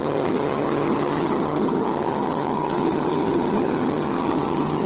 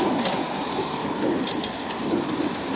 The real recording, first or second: second